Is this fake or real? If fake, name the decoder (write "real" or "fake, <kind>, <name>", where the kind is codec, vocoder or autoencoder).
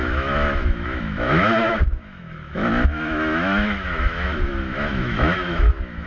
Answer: fake, autoencoder, DAC-VAE